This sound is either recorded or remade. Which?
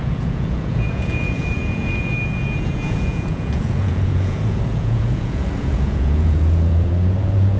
remade